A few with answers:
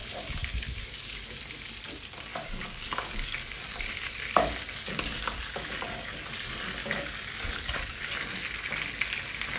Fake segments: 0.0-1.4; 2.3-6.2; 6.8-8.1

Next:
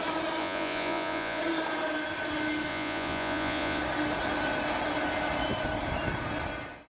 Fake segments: 0.4-1.4; 2.7-3.8